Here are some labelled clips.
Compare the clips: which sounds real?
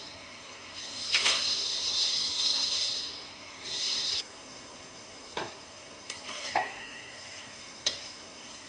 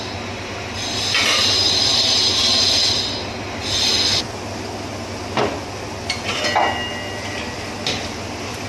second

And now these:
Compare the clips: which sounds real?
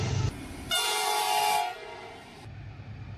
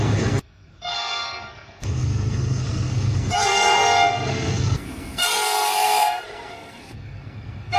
first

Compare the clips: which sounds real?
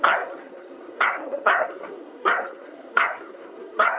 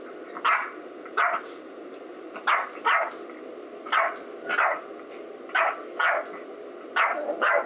second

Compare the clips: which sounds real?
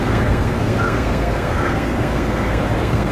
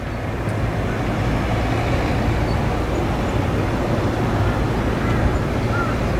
second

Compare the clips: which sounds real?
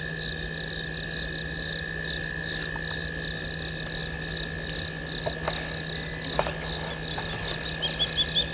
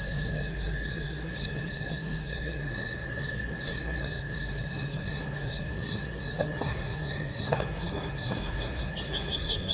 first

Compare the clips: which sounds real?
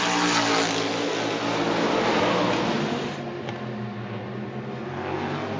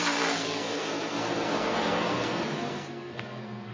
first